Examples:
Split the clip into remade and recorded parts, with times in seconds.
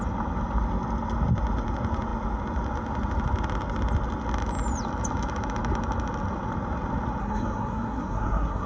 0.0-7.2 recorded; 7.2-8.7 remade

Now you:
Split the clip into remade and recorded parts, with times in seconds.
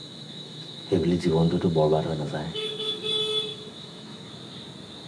0.0-3.1 remade; 3.1-3.5 recorded; 3.5-4.3 remade; 4.3-5.1 recorded